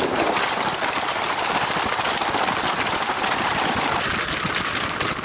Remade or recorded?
recorded